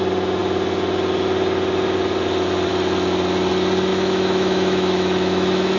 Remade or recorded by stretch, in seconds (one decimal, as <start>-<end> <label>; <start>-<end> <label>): 0.0-3.9 recorded; 3.9-5.8 remade